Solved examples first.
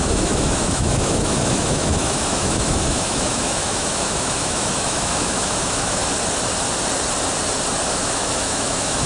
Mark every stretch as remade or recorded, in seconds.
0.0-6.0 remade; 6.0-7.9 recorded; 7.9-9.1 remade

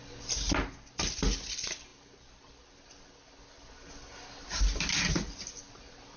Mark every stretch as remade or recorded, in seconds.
0.0-6.2 recorded

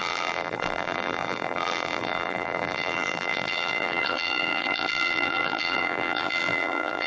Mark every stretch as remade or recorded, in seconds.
0.0-7.1 remade

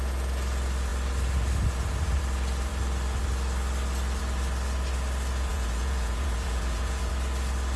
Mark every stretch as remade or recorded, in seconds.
0.0-5.5 recorded; 5.5-7.1 remade; 7.1-7.8 recorded